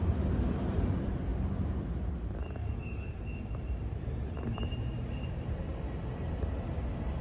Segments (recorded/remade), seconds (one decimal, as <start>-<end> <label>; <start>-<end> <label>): 0.0-1.3 recorded; 1.3-5.6 remade; 5.6-7.2 recorded